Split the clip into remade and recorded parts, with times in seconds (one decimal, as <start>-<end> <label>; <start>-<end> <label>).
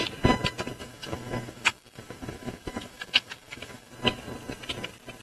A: 0.0-0.8 recorded; 0.8-3.9 remade; 3.9-5.2 recorded